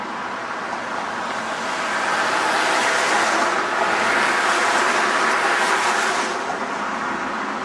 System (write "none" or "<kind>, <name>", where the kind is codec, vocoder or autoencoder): none